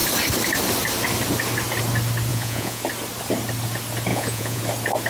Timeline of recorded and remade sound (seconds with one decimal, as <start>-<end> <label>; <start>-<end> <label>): 0.0-2.3 recorded; 2.3-2.8 remade; 2.8-4.1 recorded; 4.1-4.6 remade; 4.6-5.1 recorded